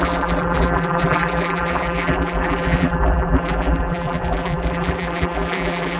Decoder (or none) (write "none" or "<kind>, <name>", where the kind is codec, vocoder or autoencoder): vocoder, BigVGAN v2